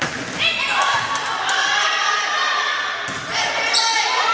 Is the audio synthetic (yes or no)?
no